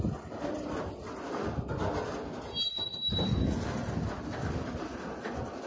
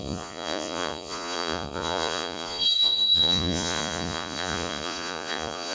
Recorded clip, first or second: first